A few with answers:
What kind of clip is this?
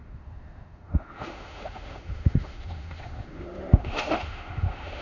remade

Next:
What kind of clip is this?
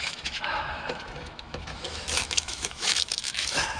remade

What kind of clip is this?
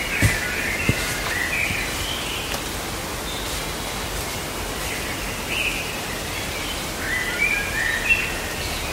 recorded